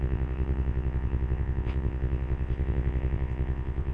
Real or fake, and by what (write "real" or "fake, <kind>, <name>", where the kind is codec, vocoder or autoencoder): fake, vocoder, WaveNeXt